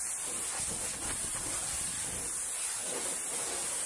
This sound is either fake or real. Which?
real